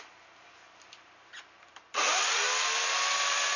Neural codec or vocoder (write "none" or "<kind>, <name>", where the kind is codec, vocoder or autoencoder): none